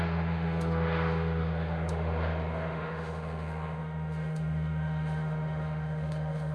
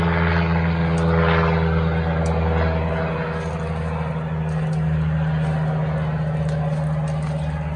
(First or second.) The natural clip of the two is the second